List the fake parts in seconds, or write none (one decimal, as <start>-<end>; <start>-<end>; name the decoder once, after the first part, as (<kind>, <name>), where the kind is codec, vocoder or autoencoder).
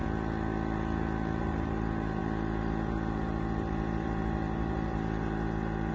1.4-5.9 (vocoder, BigVGAN v2)